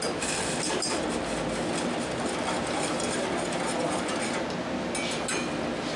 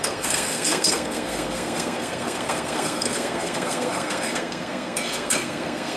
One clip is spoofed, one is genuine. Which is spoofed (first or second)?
second